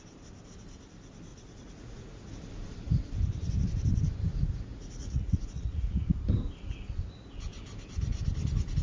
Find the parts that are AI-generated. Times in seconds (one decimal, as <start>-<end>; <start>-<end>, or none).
1.3-2.3; 4.7-6.1